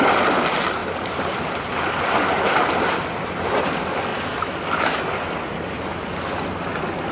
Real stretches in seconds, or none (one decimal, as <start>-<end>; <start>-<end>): 0.0-7.1